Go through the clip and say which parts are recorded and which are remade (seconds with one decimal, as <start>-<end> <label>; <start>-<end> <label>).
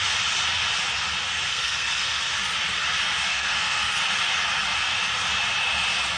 0.0-1.5 recorded; 1.5-2.3 remade; 2.3-3.3 recorded; 3.3-4.0 remade; 4.0-6.2 recorded